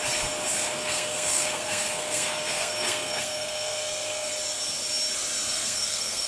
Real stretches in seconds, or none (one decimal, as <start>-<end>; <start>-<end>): 0.0-0.5; 4.3-5.5